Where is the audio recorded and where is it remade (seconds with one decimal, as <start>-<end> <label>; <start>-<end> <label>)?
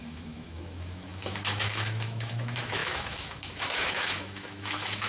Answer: 0.0-5.1 remade